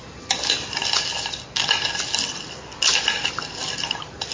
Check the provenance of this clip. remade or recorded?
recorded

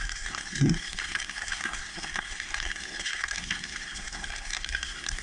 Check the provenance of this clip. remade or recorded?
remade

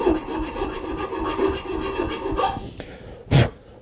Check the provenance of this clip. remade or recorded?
recorded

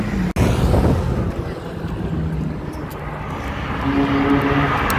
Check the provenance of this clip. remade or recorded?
recorded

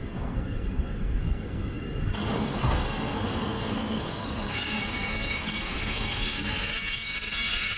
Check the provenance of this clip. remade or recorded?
remade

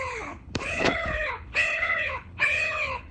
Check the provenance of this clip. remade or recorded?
remade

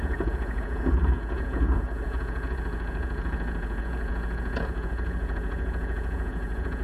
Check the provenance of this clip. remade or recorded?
remade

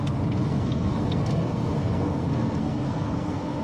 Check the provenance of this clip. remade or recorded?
remade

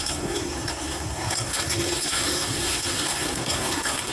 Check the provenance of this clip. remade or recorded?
remade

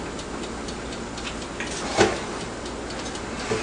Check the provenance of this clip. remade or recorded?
recorded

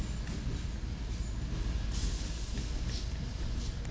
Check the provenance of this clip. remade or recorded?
recorded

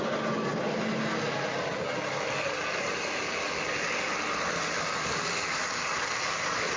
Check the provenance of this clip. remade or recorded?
recorded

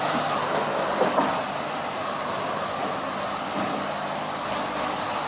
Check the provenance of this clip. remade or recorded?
recorded